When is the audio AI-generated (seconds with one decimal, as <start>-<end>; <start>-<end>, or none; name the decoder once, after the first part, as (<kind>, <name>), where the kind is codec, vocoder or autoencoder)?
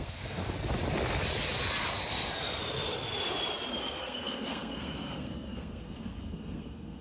0.0-0.4 (codec, SNAC); 3.8-7.0